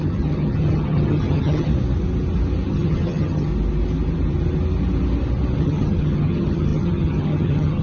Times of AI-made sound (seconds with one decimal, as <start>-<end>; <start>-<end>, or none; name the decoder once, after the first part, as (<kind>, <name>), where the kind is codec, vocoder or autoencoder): 0.0-1.7 (vocoder, HiFi-GAN); 2.7-3.5; 5.6-7.8